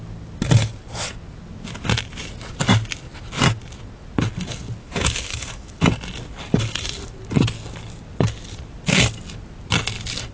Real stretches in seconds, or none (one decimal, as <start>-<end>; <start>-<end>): 0.0-4.8; 5.7-10.3